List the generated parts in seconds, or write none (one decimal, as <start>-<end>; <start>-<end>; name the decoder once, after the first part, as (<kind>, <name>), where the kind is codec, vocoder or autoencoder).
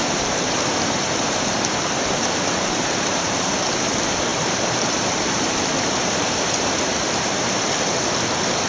0.0-3.8 (vocoder, BigVGAN v2); 4.3-7.8